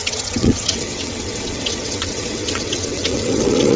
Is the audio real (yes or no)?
no